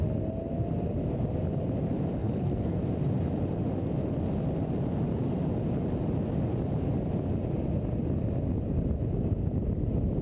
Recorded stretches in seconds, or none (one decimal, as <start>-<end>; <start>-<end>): 0.0-2.2; 2.8-10.2